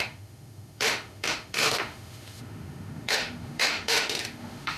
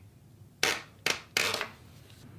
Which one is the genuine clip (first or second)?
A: second